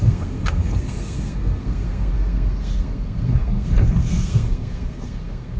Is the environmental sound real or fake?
fake